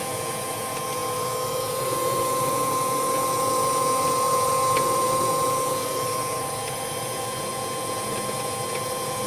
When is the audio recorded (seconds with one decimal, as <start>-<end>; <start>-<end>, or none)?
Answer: none